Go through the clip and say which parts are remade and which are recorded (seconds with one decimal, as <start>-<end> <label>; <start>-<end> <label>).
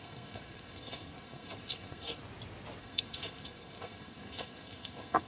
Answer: 0.0-2.2 remade; 2.2-2.8 recorded; 2.8-5.3 remade